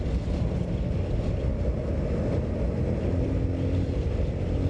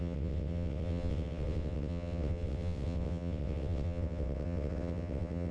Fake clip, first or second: second